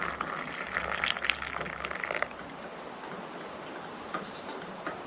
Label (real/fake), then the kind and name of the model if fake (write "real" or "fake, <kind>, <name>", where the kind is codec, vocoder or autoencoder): real